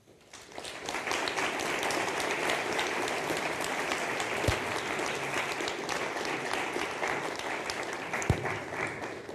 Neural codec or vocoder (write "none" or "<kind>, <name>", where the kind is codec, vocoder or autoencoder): none